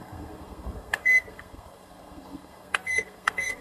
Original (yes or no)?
no